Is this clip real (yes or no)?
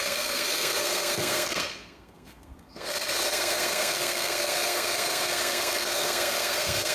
no